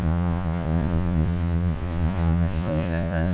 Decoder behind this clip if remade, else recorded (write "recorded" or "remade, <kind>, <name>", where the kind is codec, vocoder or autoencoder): remade, vocoder, Vocos